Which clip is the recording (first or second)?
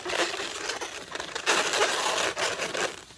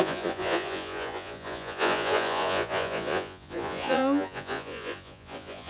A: first